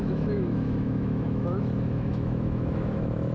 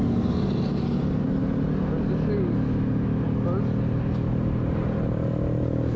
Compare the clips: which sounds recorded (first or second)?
second